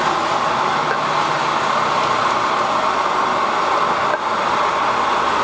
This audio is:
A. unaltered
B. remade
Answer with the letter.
A